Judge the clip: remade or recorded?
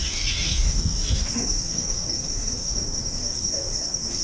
remade